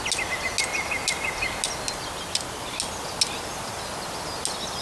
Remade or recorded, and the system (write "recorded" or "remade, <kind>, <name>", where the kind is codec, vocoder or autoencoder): recorded